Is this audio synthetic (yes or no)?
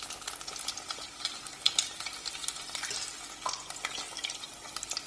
no